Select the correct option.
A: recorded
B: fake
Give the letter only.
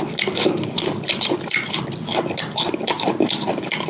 B